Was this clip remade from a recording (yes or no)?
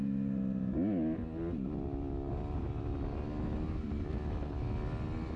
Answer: no